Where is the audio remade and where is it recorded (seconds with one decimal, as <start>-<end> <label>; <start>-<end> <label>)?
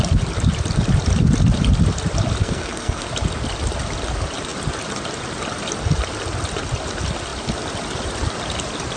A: 0.0-2.4 recorded; 2.4-3.1 remade; 3.1-9.0 recorded